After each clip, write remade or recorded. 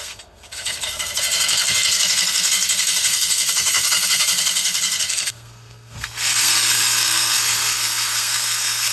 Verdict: remade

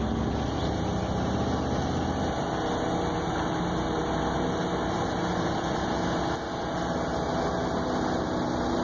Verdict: recorded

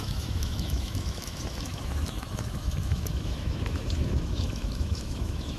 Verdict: remade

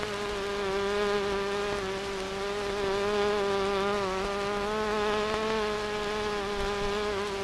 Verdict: recorded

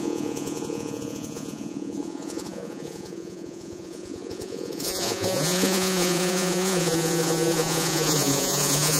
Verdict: remade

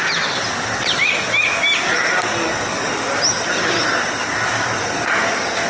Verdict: recorded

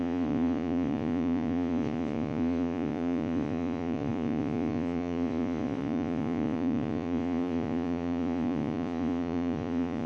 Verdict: remade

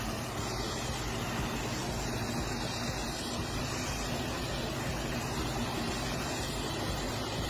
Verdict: recorded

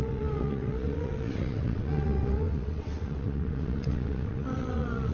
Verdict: remade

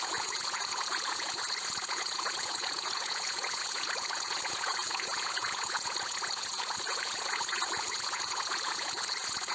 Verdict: remade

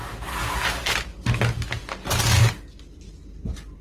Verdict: recorded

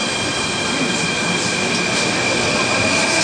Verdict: recorded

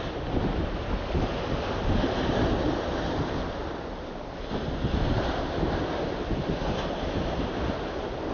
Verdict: recorded